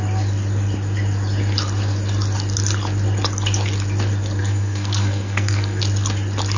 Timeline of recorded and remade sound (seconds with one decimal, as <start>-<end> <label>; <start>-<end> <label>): 0.0-4.4 recorded; 4.4-5.8 remade; 5.8-6.6 recorded